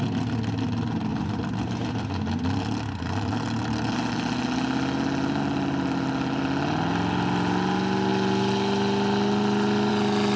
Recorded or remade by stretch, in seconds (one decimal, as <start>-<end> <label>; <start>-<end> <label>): 0.0-10.4 recorded